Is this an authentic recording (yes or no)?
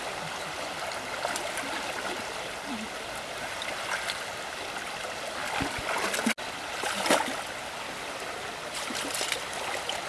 yes